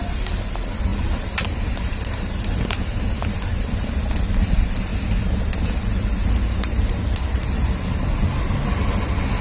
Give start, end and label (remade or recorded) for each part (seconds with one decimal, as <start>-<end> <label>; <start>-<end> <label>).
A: 0.0-0.9 recorded; 0.9-3.9 remade; 3.9-9.4 recorded